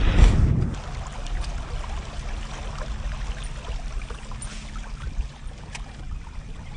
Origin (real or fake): real